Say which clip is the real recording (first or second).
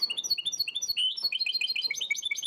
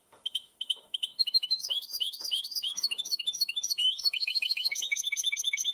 first